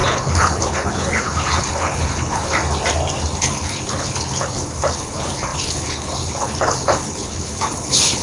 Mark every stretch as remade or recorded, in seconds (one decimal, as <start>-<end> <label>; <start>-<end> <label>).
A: 0.0-2.6 remade; 2.6-3.4 recorded; 3.4-8.2 remade